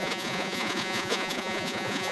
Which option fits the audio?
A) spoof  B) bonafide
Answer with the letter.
A